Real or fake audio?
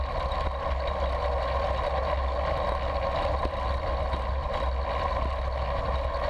real